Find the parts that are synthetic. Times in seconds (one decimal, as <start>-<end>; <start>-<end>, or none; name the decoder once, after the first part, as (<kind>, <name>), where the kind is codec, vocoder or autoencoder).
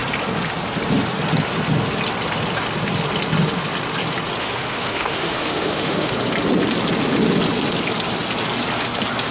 4.4-6.1 (autoencoder, DAC-VAE)